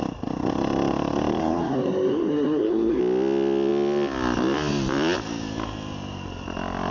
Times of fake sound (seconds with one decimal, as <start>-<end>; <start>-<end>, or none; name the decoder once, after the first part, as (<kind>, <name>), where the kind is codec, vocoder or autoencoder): 1.4-3.0 (codec, SNAC)